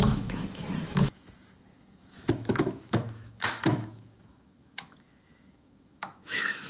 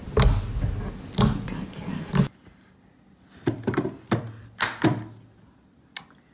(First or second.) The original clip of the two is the second